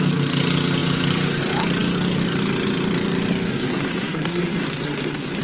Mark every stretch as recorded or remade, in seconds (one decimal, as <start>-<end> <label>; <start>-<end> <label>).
0.0-3.5 recorded; 3.5-5.4 remade